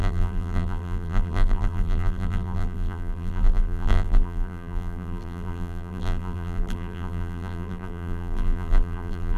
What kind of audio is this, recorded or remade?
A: remade